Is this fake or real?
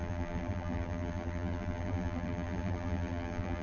fake